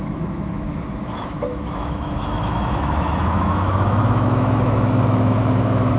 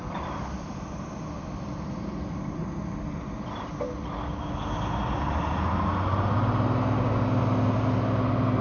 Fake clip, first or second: first